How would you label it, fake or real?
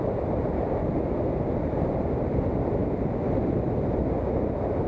real